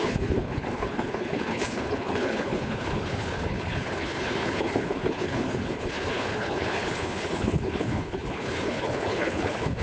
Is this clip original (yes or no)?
no